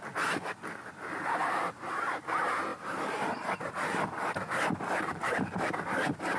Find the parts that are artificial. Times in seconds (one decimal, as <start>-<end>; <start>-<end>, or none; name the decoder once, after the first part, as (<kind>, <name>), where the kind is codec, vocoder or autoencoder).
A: 1.4-2.2 (vocoder, BigVGAN v2); 2.7-3.9